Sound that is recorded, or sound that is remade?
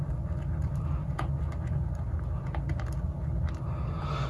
recorded